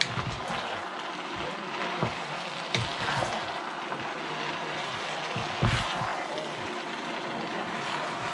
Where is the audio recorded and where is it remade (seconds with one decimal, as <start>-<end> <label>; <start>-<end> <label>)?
0.0-8.3 recorded